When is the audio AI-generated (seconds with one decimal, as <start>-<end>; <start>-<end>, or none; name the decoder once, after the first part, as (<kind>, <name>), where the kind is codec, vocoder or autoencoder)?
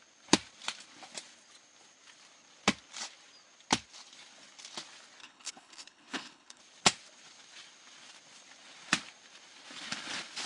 5.2-6.6 (codec, HILCodec)